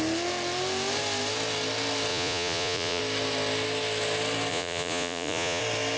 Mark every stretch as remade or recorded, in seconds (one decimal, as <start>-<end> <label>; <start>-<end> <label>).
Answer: 0.0-2.1 recorded; 2.1-3.0 remade; 3.0-4.5 recorded; 4.5-5.6 remade; 5.6-6.0 recorded

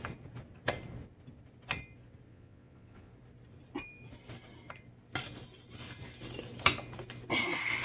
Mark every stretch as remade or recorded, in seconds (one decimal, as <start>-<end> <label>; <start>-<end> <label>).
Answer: 0.0-2.3 recorded; 2.3-3.1 remade; 3.1-7.8 recorded

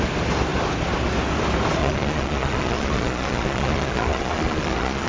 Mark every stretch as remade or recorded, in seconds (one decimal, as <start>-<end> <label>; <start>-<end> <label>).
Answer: 0.0-1.8 recorded; 1.8-5.1 remade

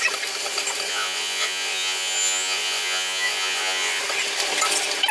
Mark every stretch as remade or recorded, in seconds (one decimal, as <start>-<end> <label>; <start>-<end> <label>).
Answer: 0.0-0.9 recorded; 0.9-4.0 remade; 4.0-5.1 recorded

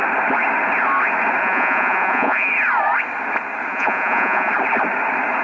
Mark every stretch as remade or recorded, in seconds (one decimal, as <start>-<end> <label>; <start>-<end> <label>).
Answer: 0.0-1.4 recorded; 1.4-2.5 remade; 2.5-3.7 recorded; 3.7-4.5 remade; 4.5-5.4 recorded

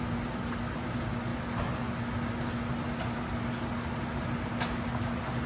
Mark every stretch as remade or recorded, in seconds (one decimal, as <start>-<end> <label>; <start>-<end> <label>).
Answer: 0.0-5.5 recorded

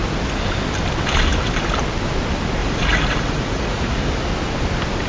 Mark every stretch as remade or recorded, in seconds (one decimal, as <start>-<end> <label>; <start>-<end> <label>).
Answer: 0.0-2.6 recorded; 2.6-4.0 remade; 4.0-5.1 recorded

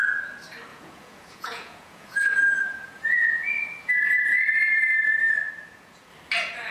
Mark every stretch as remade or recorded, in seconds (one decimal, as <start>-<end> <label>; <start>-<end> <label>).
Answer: 0.0-0.7 recorded; 0.7-3.9 remade; 3.9-5.4 recorded; 5.4-6.1 remade; 6.1-6.7 recorded